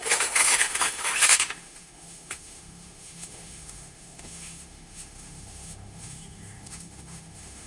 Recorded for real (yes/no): no